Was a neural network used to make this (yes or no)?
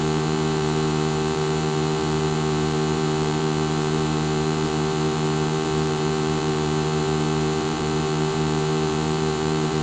yes